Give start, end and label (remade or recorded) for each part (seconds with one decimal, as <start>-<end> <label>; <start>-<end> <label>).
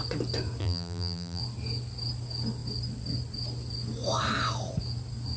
0.0-0.6 recorded; 0.6-1.4 remade; 1.4-5.4 recorded